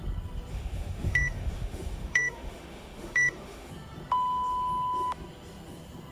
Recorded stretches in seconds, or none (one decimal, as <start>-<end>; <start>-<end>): 0.0-0.5; 3.7-6.1